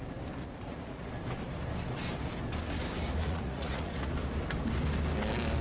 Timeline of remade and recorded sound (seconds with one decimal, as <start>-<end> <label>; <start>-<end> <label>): 0.0-0.4 recorded; 0.4-1.1 remade; 1.1-3.2 recorded; 3.2-4.1 remade; 4.1-5.6 recorded